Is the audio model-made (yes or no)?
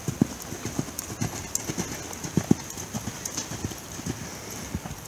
no